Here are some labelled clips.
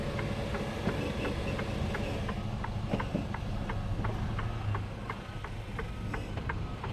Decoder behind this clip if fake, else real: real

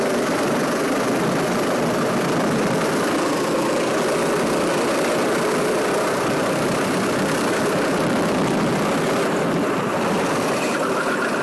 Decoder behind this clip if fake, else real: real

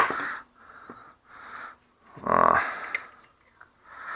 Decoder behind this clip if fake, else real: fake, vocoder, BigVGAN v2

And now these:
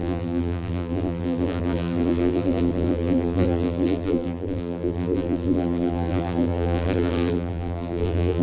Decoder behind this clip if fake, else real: fake, vocoder, BigVGAN v2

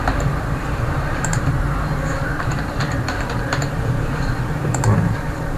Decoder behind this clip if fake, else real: fake, vocoder, BigVGAN v2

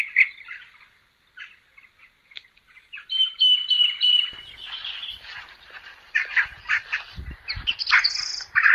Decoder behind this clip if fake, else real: real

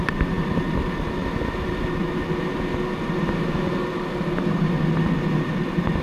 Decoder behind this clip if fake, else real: real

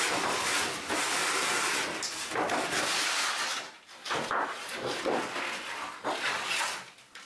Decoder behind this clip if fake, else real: real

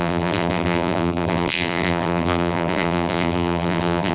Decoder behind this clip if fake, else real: fake, vocoder, BigVGAN v2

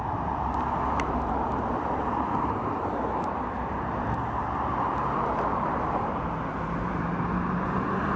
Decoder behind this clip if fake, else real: fake, vocoder, BigVGAN v2